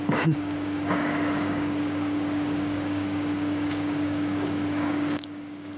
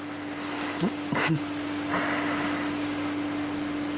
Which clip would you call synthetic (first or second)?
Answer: first